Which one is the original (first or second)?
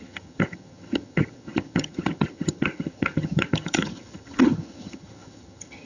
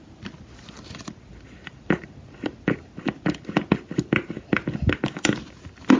second